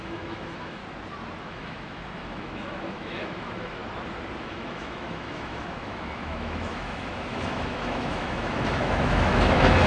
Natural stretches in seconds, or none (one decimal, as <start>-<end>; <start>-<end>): 0.8-1.4; 3.8-4.4